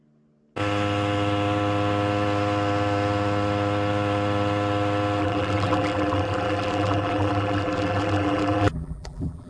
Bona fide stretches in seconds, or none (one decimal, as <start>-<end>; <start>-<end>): 0.0-5.2